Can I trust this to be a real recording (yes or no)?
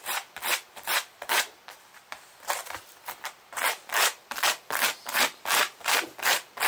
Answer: no